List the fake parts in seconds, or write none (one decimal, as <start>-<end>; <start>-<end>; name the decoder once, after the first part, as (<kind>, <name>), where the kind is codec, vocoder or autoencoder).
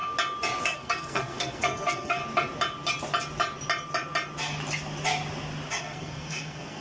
0.6-2.2 (codec, SNAC); 5.8-6.8